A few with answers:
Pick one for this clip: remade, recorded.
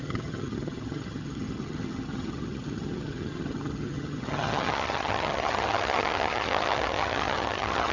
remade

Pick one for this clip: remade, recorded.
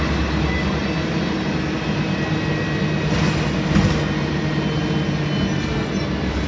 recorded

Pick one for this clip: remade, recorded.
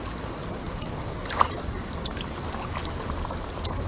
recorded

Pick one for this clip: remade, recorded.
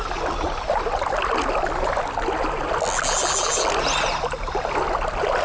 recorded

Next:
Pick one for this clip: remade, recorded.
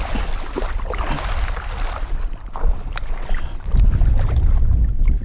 recorded